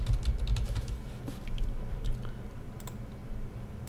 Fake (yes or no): no